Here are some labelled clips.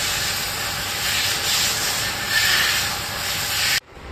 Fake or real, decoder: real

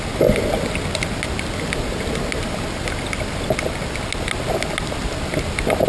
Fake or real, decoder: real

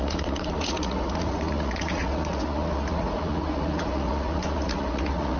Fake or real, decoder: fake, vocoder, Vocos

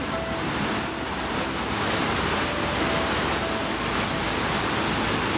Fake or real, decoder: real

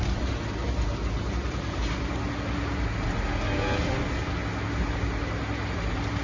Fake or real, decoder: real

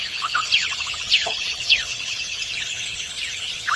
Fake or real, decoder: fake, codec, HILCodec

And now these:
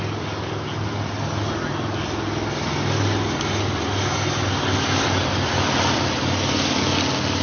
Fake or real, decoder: real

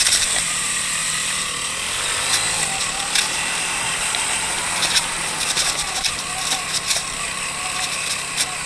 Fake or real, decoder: real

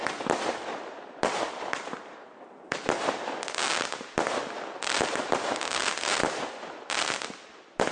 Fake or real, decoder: real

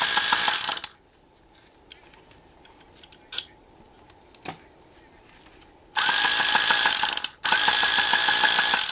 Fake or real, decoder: real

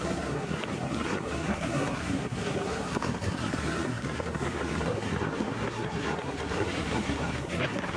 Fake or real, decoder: fake, codec, SNAC